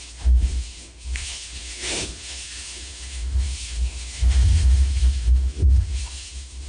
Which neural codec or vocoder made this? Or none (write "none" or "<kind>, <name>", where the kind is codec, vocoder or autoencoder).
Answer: autoencoder, DAC-VAE